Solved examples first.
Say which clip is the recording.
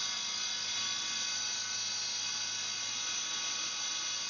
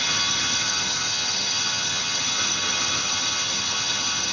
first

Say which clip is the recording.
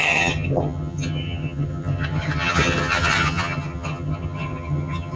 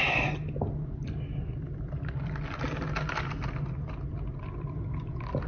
second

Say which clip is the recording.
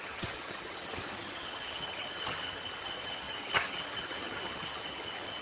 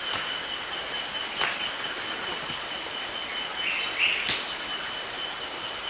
second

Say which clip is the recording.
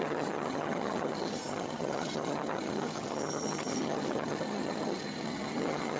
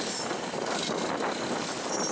second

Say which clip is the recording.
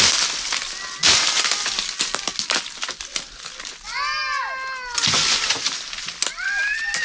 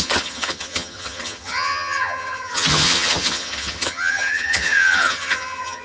first